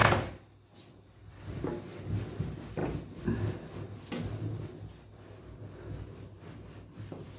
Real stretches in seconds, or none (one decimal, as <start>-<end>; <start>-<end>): 0.0-7.4